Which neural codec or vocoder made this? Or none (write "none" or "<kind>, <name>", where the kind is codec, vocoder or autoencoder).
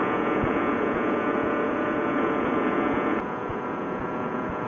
vocoder, Vocos